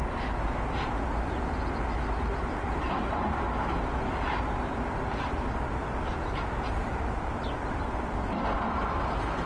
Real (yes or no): yes